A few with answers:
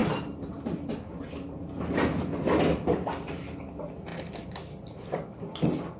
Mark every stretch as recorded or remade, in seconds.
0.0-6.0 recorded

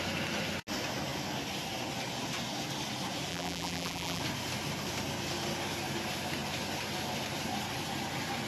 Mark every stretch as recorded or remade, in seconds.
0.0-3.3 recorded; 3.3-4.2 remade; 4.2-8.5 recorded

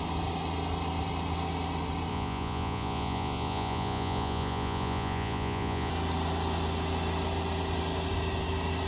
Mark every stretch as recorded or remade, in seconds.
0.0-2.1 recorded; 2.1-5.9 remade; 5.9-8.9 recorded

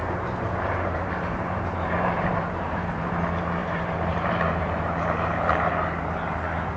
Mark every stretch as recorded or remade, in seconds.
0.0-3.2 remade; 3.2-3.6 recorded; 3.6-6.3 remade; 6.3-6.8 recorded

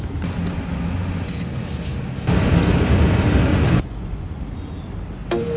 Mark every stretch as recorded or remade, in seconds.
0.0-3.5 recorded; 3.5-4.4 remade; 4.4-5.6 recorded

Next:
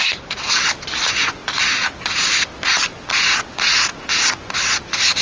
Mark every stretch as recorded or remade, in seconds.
0.0-5.2 recorded

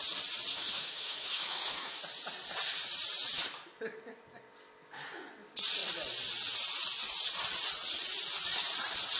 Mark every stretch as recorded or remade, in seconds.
0.0-0.5 recorded; 0.5-2.0 remade; 2.0-9.2 recorded